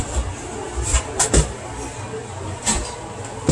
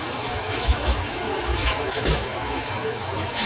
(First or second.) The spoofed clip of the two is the second